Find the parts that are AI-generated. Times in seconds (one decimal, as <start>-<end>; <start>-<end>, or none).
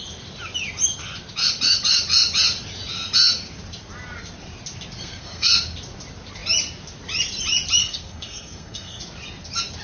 5.0-5.5; 7.8-9.0